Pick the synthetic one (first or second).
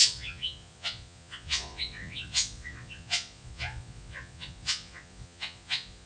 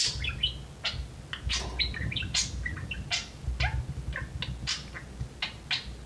first